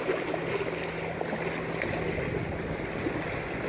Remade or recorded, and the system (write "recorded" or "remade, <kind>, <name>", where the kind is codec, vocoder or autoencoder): recorded